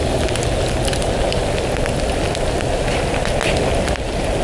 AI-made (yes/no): no